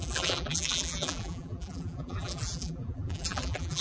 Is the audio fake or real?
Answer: fake